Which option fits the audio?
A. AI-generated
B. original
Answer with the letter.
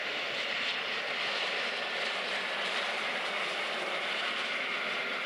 B